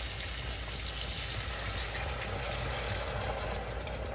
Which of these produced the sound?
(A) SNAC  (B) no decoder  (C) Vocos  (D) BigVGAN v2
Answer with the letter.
B